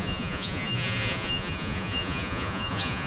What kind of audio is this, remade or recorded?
remade